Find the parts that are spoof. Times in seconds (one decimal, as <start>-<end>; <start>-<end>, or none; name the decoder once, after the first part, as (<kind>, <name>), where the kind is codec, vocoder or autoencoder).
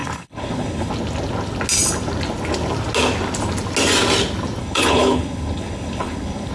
0.0-0.9 (codec, HILCodec); 4.6-6.5